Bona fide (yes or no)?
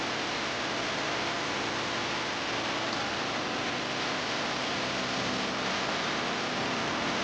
yes